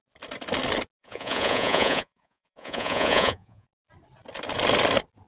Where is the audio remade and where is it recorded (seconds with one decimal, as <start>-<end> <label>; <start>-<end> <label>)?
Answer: 0.0-1.0 recorded; 1.0-3.7 remade; 3.7-5.3 recorded